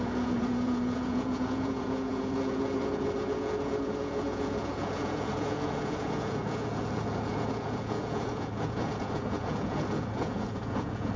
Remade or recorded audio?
remade